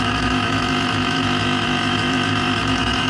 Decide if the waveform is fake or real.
fake